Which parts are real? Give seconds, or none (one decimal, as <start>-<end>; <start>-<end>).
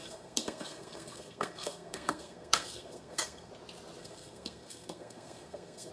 3.5-4.0